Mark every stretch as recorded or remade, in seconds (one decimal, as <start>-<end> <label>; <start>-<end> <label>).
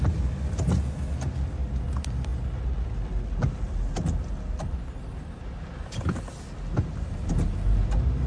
0.0-8.3 recorded